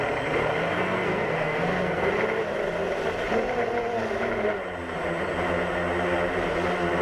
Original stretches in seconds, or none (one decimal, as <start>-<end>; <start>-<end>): 0.0-0.7; 2.1-7.0